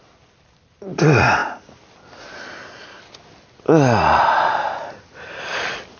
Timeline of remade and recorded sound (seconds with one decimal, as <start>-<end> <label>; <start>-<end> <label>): 0.0-6.0 recorded